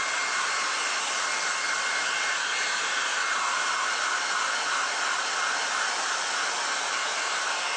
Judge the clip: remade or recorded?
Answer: recorded